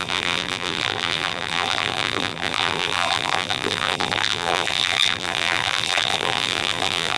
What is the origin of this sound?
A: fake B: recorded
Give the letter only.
A